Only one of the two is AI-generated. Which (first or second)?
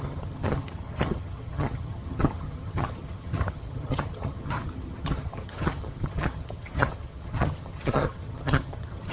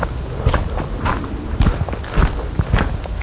first